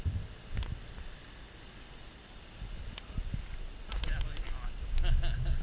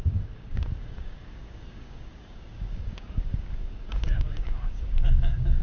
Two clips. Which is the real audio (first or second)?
first